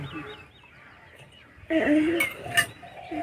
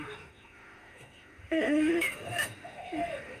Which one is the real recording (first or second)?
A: first